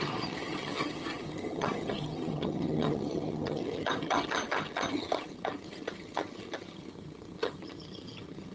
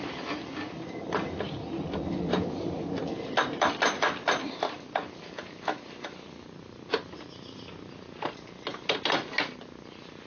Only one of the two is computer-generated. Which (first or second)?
first